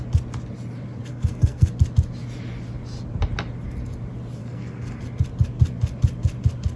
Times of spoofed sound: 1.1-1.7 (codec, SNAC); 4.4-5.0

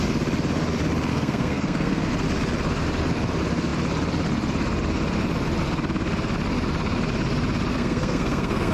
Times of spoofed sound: 1.1-2.1 (codec, SNAC); 7.7-8.7

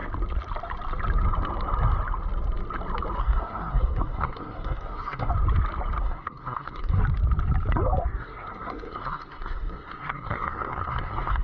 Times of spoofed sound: 3.2-5.3 (codec, SNAC); 6.0-7.0; 8.2-11.4

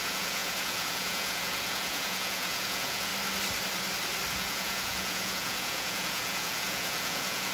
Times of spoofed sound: 0.0-3.1 (vocoder, Vocos); 4.3-7.5

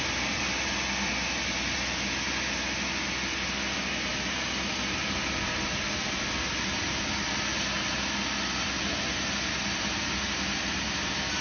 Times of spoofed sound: none

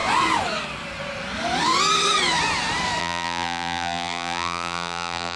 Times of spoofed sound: 3.0-5.4 (vocoder, BigVGAN v2)